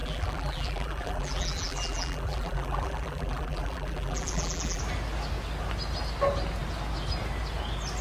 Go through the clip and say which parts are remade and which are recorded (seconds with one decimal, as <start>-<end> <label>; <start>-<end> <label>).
0.0-4.8 remade; 4.8-8.0 recorded